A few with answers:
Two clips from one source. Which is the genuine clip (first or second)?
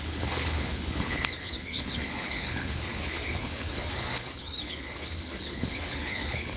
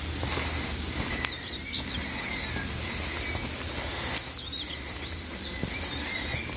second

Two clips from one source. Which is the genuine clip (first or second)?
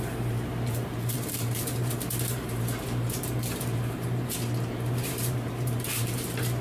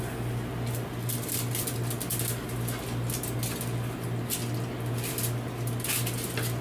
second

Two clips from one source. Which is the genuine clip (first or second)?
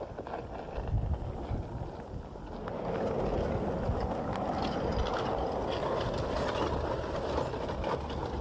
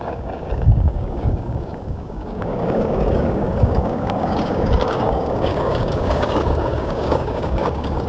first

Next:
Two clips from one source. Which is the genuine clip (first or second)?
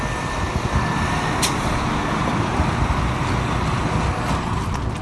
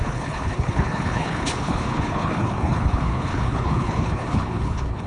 first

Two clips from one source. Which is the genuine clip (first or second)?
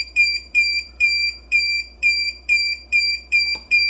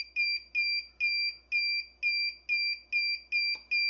second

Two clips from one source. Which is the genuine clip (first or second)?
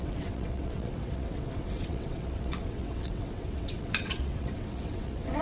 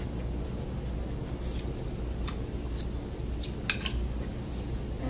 second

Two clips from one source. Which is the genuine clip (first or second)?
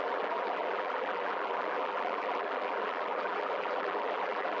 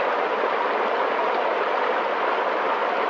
second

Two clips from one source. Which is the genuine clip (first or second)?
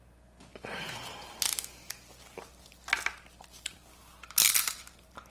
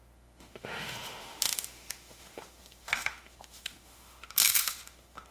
first